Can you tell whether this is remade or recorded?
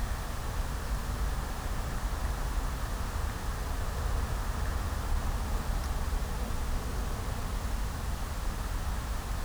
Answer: recorded